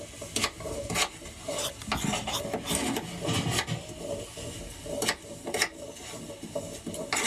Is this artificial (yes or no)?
no